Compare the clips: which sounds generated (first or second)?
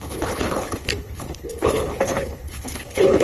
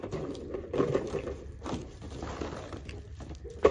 first